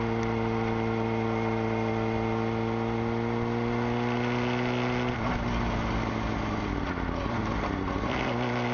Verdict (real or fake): real